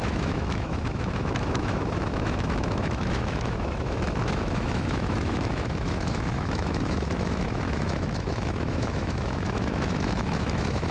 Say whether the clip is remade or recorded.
remade